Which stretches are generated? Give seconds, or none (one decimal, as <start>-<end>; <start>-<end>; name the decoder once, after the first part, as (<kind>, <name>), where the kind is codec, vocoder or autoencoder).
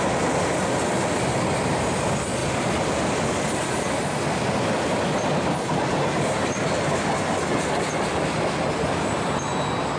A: none